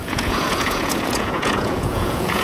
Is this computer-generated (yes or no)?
yes